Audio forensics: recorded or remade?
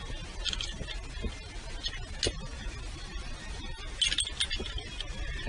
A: recorded